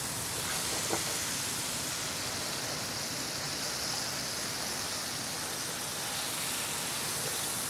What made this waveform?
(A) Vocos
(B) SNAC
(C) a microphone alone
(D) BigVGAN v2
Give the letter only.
C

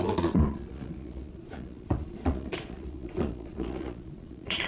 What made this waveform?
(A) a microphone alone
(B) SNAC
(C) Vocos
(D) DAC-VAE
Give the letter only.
C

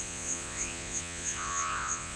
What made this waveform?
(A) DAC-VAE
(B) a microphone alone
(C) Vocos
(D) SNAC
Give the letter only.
C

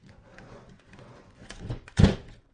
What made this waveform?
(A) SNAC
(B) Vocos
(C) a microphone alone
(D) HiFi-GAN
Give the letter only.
B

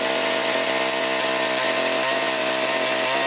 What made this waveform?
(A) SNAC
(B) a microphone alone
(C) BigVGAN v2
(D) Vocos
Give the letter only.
B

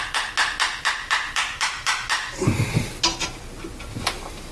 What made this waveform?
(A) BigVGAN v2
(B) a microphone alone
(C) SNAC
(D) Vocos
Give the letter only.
B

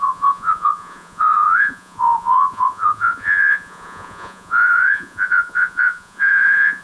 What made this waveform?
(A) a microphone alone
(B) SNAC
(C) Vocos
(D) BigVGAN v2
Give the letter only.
C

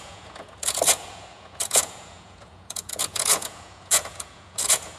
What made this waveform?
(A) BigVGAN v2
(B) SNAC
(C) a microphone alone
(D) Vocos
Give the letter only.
D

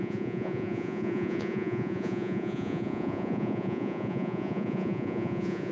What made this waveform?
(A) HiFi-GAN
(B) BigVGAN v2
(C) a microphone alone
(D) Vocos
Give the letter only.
D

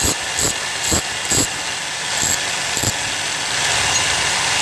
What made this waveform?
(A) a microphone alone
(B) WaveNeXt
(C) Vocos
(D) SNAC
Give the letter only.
A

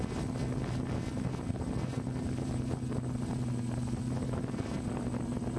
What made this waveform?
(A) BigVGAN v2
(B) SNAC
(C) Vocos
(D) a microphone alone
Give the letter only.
D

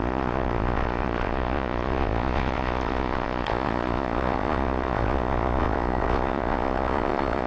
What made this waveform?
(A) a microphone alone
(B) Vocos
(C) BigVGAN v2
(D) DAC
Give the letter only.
B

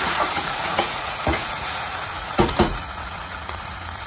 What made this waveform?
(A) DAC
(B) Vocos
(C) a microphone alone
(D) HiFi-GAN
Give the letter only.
B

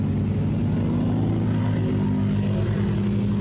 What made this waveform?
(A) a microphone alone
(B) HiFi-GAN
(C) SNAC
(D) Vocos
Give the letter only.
A